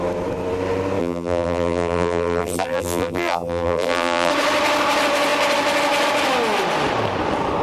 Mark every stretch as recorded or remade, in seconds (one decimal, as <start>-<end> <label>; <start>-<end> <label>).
0.0-1.0 recorded; 1.0-4.3 remade; 4.3-7.6 recorded